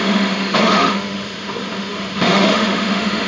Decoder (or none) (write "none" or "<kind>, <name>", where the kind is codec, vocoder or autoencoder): autoencoder, DAC-VAE